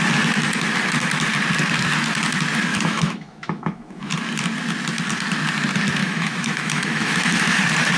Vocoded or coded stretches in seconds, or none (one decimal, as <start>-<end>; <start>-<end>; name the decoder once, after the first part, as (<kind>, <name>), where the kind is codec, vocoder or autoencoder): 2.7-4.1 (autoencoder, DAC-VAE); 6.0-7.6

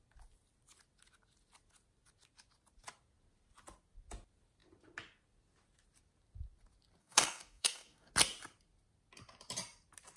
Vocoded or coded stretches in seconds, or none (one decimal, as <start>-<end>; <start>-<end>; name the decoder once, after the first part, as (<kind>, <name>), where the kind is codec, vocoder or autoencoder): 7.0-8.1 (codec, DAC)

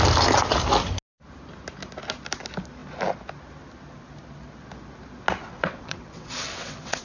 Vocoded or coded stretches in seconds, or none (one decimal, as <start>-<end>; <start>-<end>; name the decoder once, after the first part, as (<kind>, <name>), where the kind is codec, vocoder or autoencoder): 5.4-7.0 (vocoder, WaveNeXt)

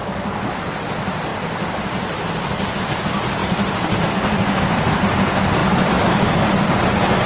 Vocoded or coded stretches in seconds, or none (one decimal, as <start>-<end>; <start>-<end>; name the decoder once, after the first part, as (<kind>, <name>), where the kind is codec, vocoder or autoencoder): 0.6-1.3 (vocoder, BigVGAN v2); 2.8-7.3

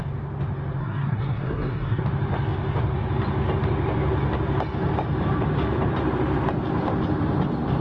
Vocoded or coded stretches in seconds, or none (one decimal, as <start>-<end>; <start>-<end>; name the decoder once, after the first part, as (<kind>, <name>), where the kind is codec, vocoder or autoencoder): 0.8-2.0 (codec, SNAC)